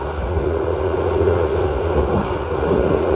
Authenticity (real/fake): fake